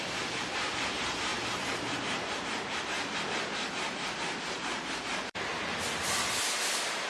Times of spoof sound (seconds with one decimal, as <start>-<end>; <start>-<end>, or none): 0.0-5.5; 6.2-7.1